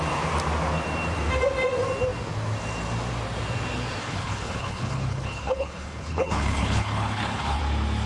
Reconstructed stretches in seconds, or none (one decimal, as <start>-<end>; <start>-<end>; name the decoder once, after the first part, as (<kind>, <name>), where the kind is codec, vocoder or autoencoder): 4.0-7.6 (codec, HILCodec)